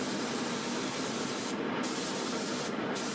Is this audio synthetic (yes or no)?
no